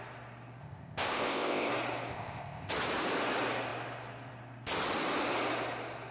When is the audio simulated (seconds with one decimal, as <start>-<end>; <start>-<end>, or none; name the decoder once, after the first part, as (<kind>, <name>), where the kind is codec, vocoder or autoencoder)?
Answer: 0.6-1.7 (codec, ZipCodec); 2.1-2.7